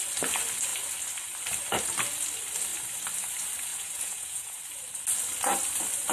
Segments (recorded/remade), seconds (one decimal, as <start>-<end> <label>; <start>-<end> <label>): 0.0-3.7 recorded; 3.7-4.6 remade; 4.6-6.1 recorded